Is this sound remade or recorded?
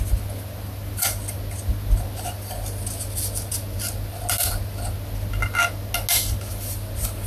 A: recorded